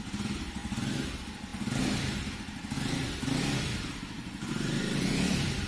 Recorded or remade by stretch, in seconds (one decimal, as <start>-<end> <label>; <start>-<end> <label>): 0.0-5.7 recorded